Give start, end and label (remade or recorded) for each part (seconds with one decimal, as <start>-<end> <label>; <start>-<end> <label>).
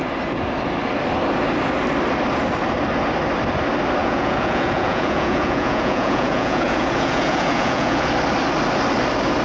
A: 0.0-4.0 recorded; 4.0-8.1 remade; 8.1-9.4 recorded